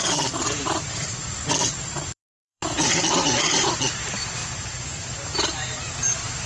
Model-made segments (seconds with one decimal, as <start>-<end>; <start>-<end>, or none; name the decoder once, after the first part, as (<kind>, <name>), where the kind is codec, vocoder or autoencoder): 0.0-6.5 (vocoder, BigVGAN v2)